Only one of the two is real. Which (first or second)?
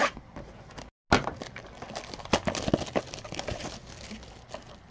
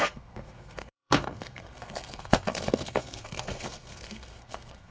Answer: first